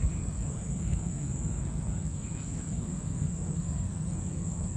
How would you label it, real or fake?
fake